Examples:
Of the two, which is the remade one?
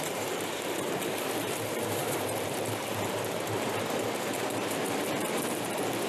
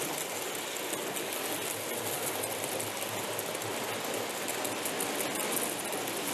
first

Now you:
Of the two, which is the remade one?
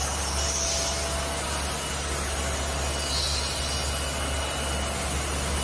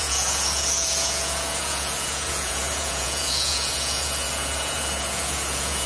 second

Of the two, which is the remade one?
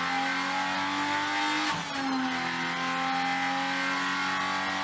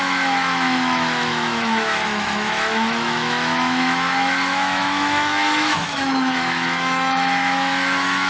second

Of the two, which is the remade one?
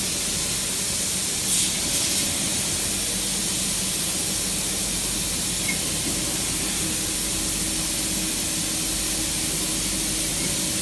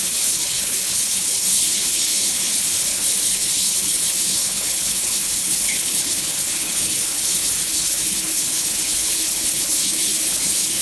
second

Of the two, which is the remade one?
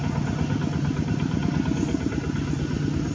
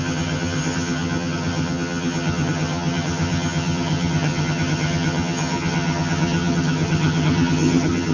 second